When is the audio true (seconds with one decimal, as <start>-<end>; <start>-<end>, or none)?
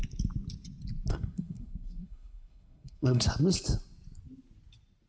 0.0-1.1; 3.3-5.1